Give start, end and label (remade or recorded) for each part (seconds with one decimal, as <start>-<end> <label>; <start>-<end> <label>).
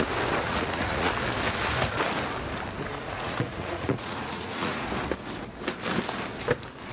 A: 0.0-0.4 recorded; 0.4-1.1 remade; 1.1-3.0 recorded; 3.0-4.9 remade; 4.9-6.9 recorded